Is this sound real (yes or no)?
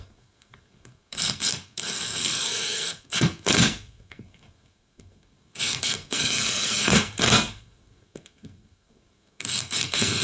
no